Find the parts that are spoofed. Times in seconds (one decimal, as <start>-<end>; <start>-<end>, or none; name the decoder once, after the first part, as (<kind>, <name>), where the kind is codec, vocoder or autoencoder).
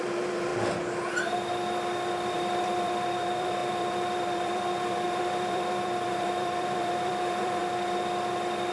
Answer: 0.0-0.5 (vocoder, BigVGAN v2); 2.3-7.6